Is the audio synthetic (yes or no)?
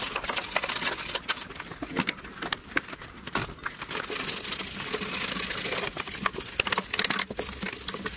no